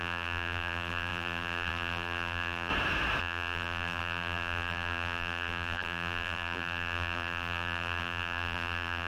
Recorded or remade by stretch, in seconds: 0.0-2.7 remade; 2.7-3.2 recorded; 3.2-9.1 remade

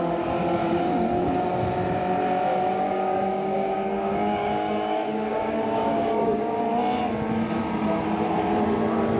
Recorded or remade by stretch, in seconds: 0.0-0.6 recorded; 0.6-1.4 remade; 1.4-2.5 recorded; 2.5-6.6 remade; 6.6-9.2 recorded

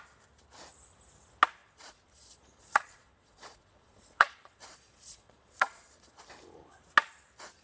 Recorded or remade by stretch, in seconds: 0.0-1.6 recorded; 1.6-6.2 remade; 6.2-7.6 recorded

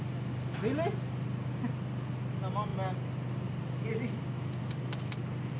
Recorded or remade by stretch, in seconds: 0.0-5.6 recorded

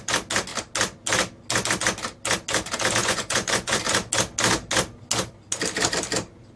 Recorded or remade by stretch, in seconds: 0.0-3.0 recorded; 3.0-3.8 remade; 3.8-6.6 recorded

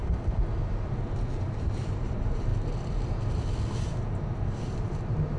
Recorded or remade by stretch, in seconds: 0.0-1.4 recorded; 1.4-2.5 remade; 2.5-4.6 recorded; 4.6-5.4 remade